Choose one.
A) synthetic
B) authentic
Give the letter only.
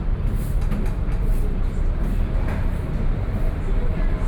B